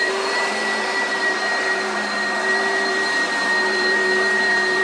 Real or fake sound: fake